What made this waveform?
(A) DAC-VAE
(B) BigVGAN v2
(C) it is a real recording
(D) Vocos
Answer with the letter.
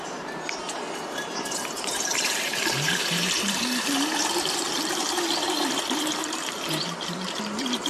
B